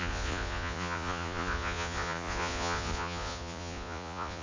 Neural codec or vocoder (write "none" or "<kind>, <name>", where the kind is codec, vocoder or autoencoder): vocoder, Vocos